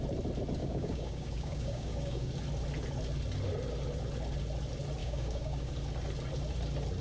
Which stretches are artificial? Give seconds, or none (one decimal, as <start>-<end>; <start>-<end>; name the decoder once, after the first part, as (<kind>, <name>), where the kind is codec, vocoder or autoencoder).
0.6-2.3 (codec, DAC); 5.0-5.7